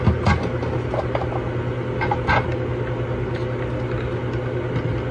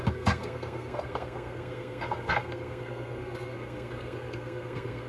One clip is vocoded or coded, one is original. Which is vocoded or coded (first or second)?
second